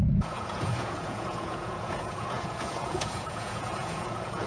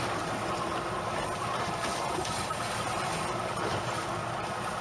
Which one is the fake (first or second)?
first